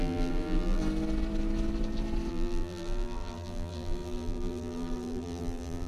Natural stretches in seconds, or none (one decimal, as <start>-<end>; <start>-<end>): 0.8-2.3